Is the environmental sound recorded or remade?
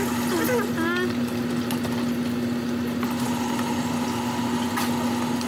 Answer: recorded